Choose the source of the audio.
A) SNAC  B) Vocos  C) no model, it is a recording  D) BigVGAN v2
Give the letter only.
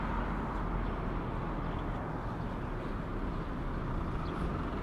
C